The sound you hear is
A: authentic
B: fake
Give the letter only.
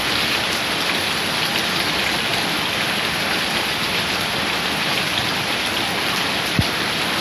A